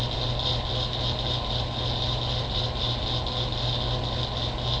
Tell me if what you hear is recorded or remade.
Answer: recorded